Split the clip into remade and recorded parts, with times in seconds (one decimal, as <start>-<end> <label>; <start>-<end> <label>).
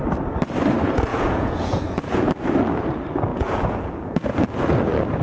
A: 0.0-1.1 recorded; 1.1-2.3 remade; 2.3-3.3 recorded; 3.3-4.1 remade; 4.1-5.2 recorded